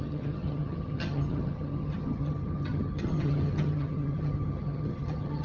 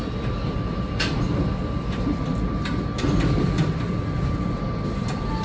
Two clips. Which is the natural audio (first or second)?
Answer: second